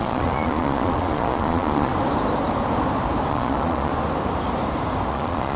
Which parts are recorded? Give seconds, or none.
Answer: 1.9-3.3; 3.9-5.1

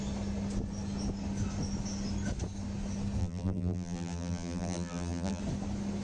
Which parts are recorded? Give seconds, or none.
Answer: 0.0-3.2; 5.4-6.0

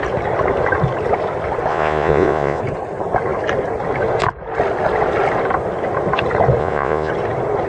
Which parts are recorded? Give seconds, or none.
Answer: 0.0-1.7; 2.6-6.6; 7.1-7.7